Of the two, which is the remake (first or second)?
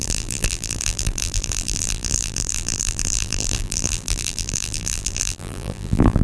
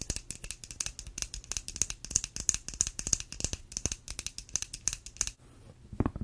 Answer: first